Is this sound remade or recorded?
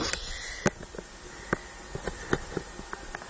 recorded